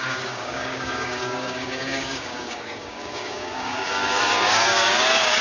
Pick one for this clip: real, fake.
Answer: fake